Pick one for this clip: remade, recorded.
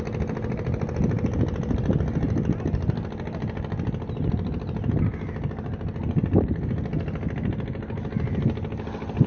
recorded